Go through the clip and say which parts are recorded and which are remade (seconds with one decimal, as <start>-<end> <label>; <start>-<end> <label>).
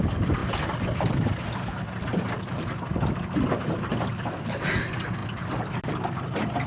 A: 0.0-6.7 recorded